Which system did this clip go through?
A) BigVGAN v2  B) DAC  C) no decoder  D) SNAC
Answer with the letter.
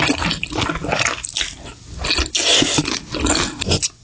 C